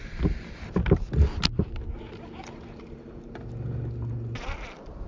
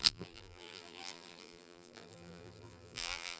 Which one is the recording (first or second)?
first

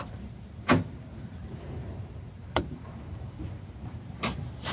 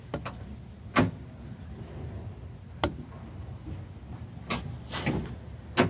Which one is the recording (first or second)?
second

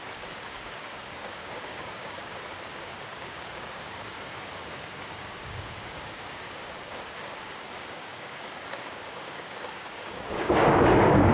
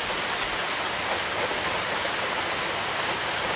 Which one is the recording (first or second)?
second